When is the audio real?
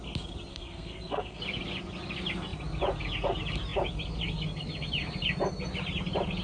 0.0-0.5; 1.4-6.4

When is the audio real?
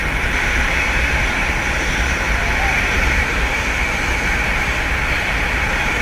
3.6-6.0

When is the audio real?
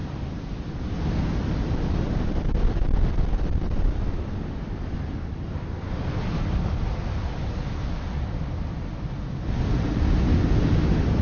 0.0-11.2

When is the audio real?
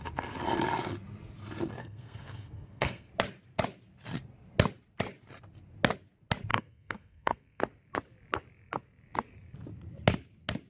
0.0-1.8; 3.1-6.5; 7.6-10.7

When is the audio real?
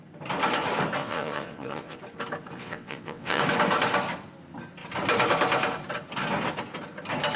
0.0-1.0; 2.0-2.6; 3.4-7.4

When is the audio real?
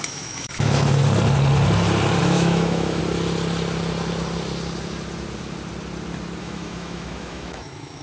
1.0-2.2; 3.0-6.4